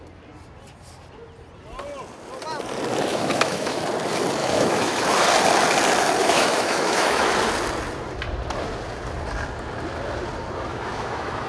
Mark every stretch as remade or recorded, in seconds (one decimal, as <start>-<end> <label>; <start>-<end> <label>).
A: 0.0-3.1 recorded; 3.1-3.8 remade; 3.8-4.4 recorded; 4.4-5.0 remade; 5.0-6.2 recorded; 6.2-7.3 remade; 7.3-10.7 recorded; 10.7-11.5 remade